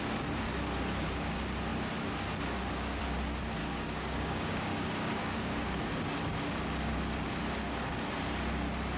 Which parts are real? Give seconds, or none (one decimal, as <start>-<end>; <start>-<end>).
0.0-3.6; 5.9-9.0